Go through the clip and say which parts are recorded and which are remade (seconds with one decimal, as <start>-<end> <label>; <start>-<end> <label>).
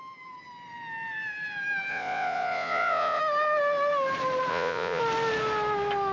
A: 0.0-1.9 recorded; 1.9-3.2 remade; 3.2-4.5 recorded; 4.5-5.0 remade; 5.0-6.1 recorded